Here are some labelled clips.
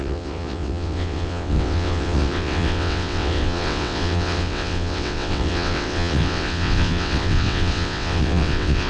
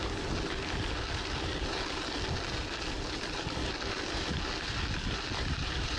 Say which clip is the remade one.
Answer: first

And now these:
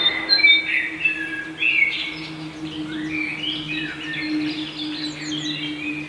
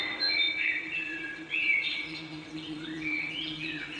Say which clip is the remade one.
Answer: second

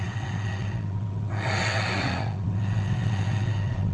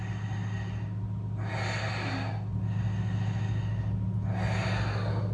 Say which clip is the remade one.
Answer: first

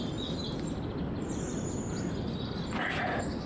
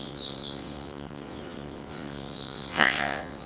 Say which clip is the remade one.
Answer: second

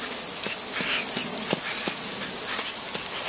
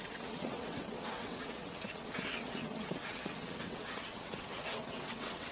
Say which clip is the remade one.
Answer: second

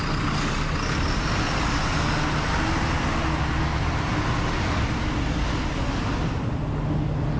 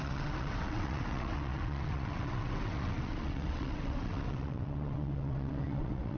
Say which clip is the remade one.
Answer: second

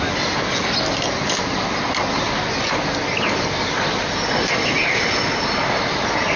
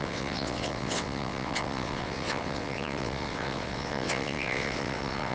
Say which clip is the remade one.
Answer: second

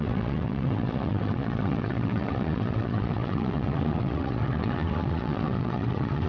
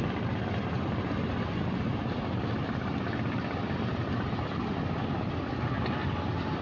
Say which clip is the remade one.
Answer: first